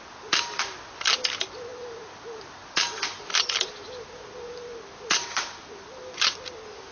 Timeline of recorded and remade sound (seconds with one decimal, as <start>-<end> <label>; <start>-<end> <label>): 0.0-6.9 recorded